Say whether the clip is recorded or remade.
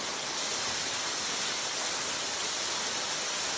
recorded